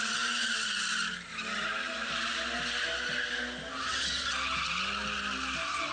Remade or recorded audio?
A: recorded